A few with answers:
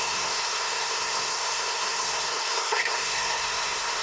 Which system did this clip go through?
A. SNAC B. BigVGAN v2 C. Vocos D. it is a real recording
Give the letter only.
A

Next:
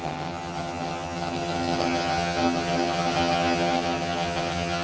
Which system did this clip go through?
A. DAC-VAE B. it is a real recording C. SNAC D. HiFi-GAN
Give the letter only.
D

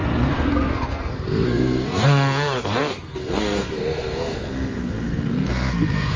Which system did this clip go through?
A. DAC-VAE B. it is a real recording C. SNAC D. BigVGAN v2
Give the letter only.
C